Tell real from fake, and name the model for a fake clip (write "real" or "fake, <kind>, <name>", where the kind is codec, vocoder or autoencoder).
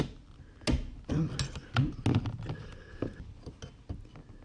real